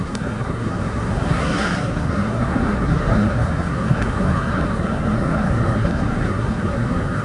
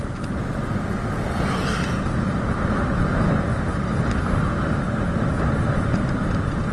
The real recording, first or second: second